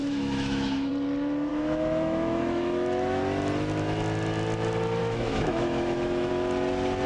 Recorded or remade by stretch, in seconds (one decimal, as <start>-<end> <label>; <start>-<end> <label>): 0.0-0.9 remade; 0.9-1.5 recorded; 1.5-3.2 remade; 3.2-5.0 recorded; 5.0-6.3 remade; 6.3-7.1 recorded